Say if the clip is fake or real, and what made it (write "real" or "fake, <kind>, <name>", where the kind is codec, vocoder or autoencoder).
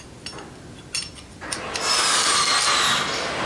real